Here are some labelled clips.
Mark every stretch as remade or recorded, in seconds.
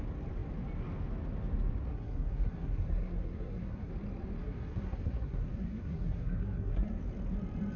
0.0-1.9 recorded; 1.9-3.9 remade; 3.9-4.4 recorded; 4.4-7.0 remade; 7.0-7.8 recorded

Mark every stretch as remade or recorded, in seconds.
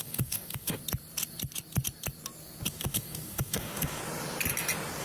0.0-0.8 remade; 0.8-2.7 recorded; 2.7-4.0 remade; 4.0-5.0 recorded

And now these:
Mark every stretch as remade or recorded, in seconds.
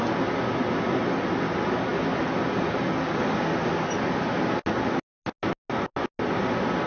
0.0-6.9 recorded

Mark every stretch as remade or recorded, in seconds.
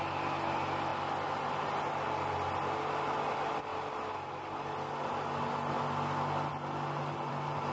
0.0-7.7 recorded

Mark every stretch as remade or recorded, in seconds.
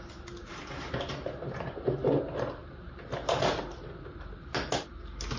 0.0-5.4 recorded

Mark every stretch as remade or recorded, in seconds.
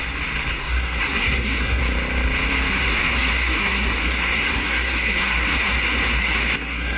0.0-0.5 recorded; 0.5-1.8 remade; 1.8-2.7 recorded; 2.7-7.0 remade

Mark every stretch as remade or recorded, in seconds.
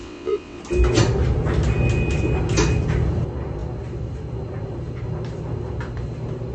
0.0-0.6 remade; 0.6-6.5 recorded